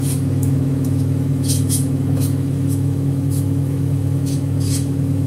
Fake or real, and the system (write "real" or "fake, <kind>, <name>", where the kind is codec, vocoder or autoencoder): fake, autoencoder, DAC-VAE